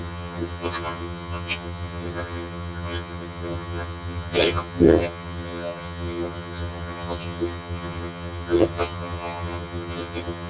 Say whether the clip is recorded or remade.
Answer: remade